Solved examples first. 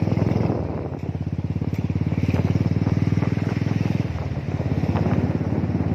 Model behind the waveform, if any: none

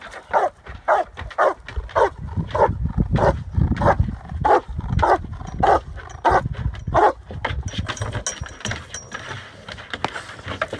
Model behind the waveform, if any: none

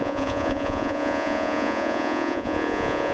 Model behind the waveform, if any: vocoder, Vocos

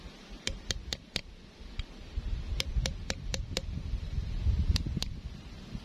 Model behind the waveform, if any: none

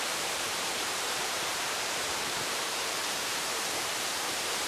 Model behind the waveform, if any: vocoder, BigVGAN v2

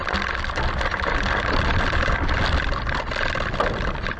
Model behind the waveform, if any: none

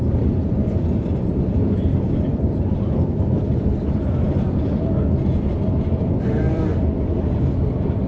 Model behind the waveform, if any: vocoder, BigVGAN v2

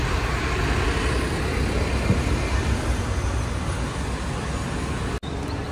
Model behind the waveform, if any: none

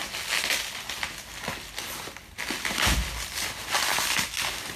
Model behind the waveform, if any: none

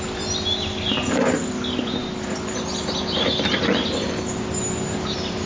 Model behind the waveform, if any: none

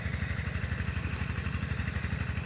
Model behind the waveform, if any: vocoder, BigVGAN v2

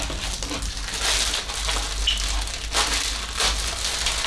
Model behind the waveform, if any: none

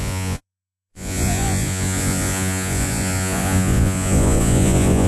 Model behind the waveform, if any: vocoder, Vocos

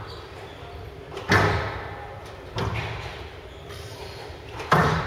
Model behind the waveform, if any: none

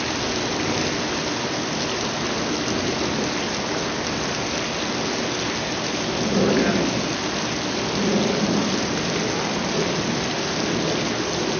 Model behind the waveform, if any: none